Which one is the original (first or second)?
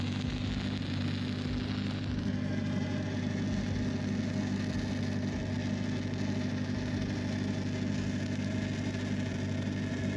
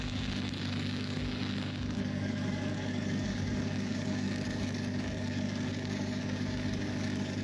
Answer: first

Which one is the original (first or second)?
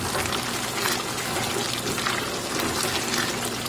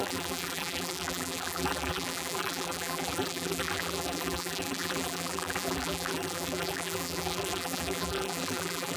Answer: first